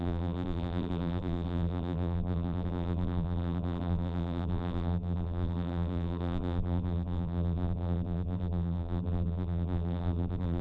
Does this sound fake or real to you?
fake